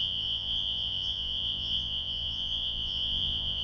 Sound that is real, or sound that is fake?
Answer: fake